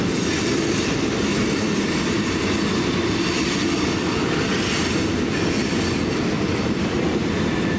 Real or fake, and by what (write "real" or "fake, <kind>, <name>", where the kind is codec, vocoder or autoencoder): real